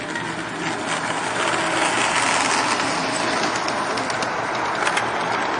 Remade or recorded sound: recorded